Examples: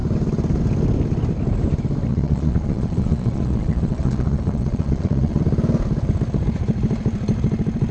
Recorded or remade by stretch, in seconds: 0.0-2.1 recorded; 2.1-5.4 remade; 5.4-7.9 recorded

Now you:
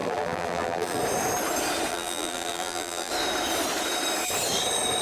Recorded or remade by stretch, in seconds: 0.0-1.0 remade; 1.0-1.9 recorded; 1.9-3.1 remade; 3.1-5.0 recorded

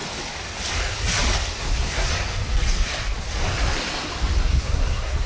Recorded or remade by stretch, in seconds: 0.0-1.6 recorded; 1.6-2.1 remade; 2.1-4.4 recorded; 4.4-5.3 remade